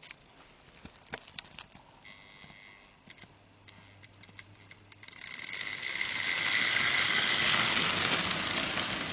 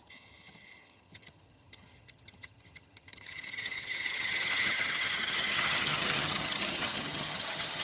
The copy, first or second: second